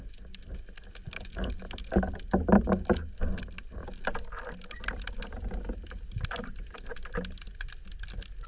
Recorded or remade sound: recorded